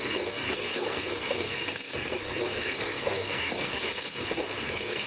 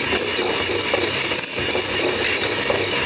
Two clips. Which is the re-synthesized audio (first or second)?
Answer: first